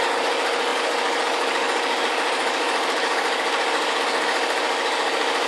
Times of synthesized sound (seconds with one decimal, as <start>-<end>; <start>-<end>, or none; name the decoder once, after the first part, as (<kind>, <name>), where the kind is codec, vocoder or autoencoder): 0.0-5.5 (codec, DAC)